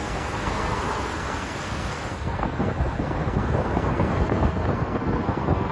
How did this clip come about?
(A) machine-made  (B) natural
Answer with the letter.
A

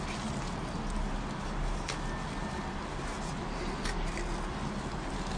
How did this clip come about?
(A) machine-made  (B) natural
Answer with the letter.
B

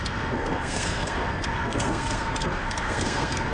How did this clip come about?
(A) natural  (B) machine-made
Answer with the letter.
B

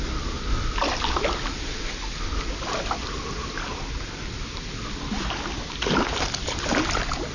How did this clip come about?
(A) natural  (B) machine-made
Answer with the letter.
A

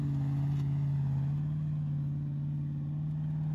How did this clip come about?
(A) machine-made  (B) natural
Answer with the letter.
B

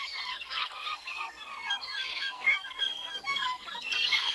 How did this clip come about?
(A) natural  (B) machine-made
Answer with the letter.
B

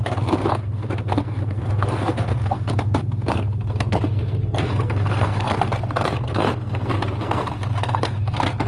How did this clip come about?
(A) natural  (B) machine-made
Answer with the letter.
B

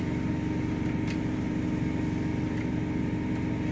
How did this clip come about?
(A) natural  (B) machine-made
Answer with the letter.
A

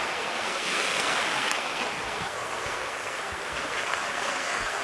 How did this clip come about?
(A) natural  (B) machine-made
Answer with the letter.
B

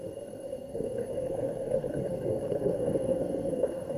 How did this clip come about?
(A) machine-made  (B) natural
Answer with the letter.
A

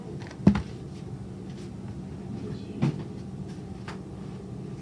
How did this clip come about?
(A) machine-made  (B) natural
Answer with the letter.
B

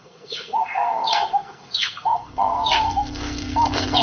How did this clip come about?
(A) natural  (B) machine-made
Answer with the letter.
B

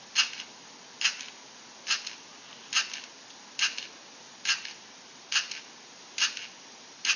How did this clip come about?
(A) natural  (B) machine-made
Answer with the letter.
A